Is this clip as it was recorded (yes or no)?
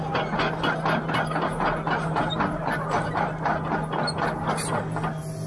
yes